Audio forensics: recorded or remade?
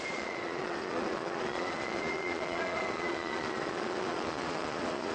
remade